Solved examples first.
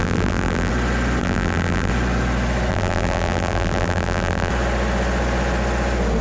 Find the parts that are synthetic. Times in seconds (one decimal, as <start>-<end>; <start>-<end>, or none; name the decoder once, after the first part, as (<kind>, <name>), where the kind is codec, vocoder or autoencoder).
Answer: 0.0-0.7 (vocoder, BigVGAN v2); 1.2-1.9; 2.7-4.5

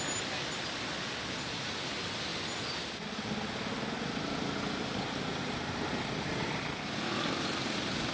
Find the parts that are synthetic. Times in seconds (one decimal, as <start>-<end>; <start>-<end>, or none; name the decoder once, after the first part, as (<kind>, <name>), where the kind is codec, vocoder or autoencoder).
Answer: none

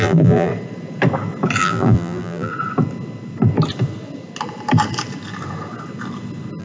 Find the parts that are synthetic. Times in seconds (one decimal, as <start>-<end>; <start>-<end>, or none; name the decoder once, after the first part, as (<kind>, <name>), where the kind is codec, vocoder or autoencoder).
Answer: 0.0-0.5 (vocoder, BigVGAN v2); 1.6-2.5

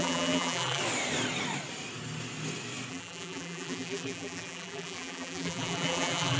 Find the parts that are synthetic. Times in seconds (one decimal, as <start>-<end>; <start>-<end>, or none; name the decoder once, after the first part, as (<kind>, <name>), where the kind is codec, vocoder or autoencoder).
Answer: 0.0-0.8 (vocoder, BigVGAN v2); 2.9-6.4

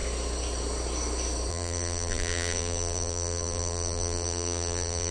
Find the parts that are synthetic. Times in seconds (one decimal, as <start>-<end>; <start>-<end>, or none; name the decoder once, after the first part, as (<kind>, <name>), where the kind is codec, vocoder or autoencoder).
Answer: 1.5-5.1 (vocoder, BigVGAN v2)